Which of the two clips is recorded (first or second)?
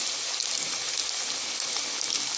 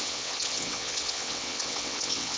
first